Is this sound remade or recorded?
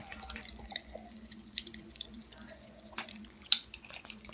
remade